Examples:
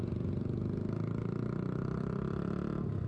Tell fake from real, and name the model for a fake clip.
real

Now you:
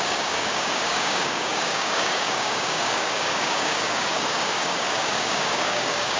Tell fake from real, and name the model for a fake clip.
fake, codec, DAC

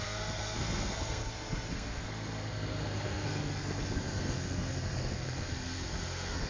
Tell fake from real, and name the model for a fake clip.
fake, codec, SNAC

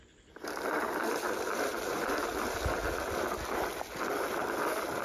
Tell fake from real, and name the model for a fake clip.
real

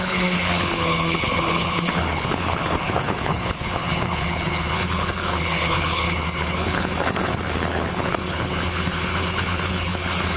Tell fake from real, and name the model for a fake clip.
fake, codec, HILCodec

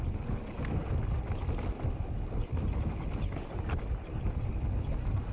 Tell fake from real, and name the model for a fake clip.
real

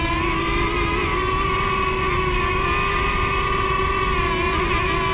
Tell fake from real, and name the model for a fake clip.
real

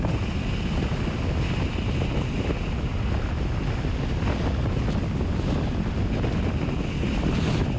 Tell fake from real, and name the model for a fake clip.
real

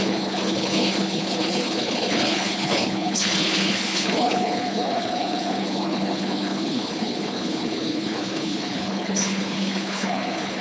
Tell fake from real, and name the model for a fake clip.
fake, codec, HILCodec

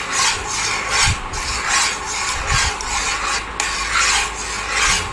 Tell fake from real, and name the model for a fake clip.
real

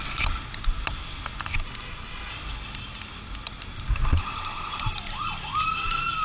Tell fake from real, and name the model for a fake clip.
real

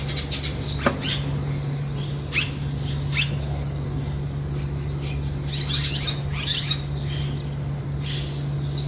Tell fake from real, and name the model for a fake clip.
real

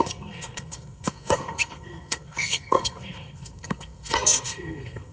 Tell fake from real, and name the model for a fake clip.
fake, codec, SNAC